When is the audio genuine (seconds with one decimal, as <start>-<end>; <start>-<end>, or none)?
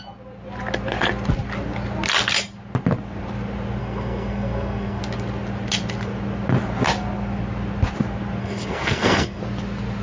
0.0-3.8; 5.0-8.4; 9.4-10.0